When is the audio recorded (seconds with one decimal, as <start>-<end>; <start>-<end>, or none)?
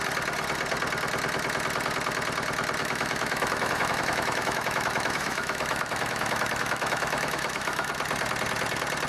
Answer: 0.0-2.8; 7.9-9.1